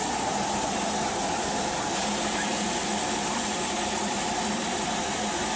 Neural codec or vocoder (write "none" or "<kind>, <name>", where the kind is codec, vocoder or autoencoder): none